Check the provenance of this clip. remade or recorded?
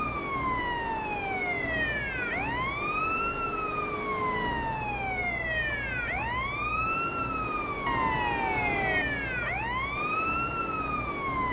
recorded